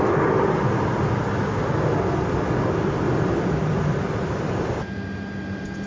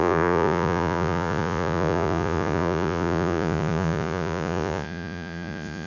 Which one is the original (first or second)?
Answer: first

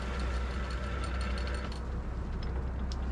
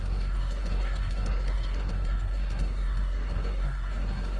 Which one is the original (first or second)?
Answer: first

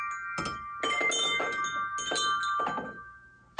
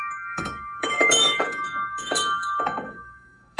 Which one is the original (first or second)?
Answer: first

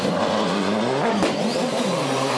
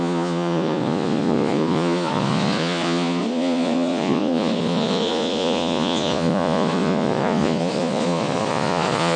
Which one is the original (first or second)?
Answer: first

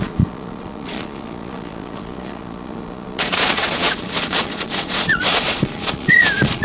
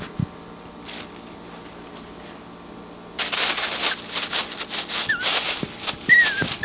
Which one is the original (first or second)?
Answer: second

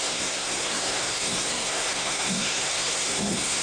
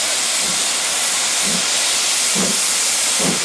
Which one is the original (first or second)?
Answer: second